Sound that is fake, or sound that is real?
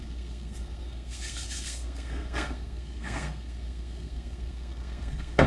fake